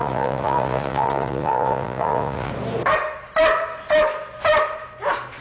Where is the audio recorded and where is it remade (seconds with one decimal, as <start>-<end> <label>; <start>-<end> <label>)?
0.0-2.5 remade; 2.5-5.4 recorded